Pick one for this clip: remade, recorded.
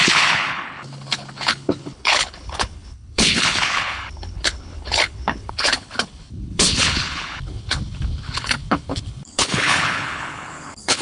remade